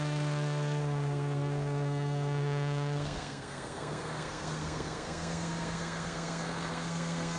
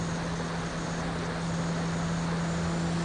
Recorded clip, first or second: second